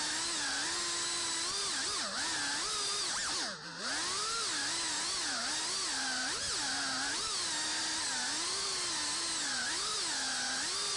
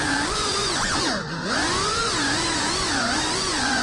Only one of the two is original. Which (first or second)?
first